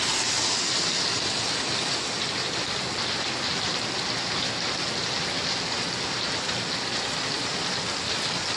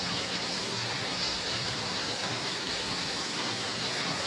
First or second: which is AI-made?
second